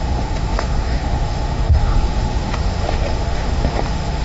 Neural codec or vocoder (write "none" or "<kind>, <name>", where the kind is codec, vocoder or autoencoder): autoencoder, DAC-VAE